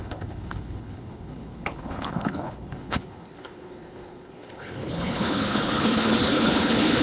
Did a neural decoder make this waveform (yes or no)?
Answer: yes